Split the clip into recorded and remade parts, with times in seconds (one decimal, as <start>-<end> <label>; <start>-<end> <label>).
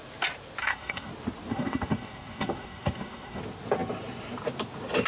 0.0-0.6 recorded; 0.6-1.1 remade; 1.1-1.5 recorded; 1.5-3.4 remade; 3.4-5.1 recorded